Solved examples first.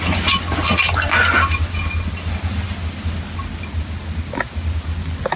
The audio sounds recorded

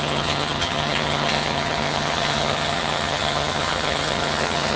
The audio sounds remade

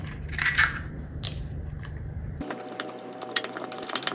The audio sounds remade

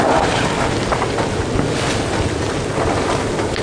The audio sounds recorded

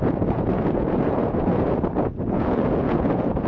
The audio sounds remade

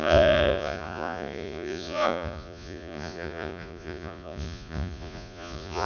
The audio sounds remade